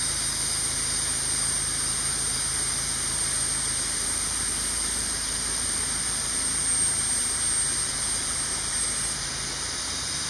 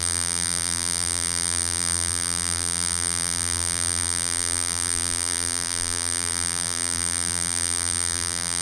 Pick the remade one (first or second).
second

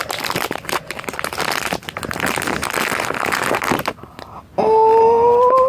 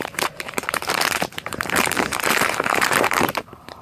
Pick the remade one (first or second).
second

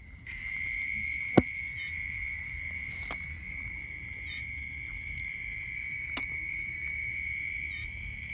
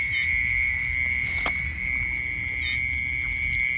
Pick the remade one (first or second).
first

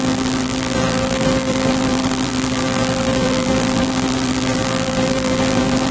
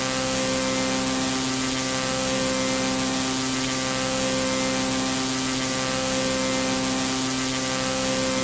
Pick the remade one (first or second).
first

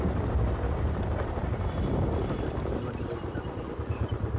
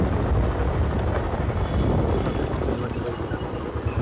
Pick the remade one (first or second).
first